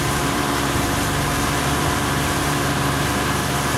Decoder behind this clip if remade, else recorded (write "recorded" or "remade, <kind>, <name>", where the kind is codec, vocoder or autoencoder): remade, vocoder, BigVGAN v2